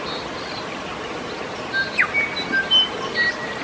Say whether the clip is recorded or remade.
recorded